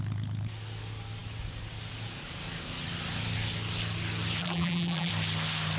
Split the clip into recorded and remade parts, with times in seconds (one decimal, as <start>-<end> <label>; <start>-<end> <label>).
0.0-4.4 recorded; 4.4-5.1 remade; 5.1-5.8 recorded